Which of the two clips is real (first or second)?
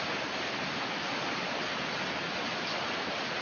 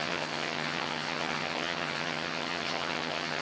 first